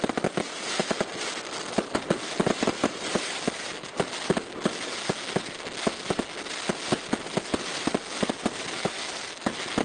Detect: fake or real real